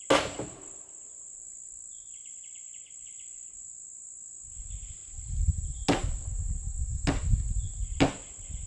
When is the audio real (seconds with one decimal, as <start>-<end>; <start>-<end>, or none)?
0.0-8.7